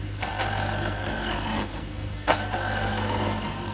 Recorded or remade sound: remade